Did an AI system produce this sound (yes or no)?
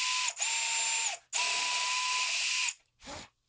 no